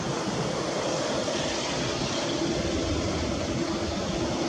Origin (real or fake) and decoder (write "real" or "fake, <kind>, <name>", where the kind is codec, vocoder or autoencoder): real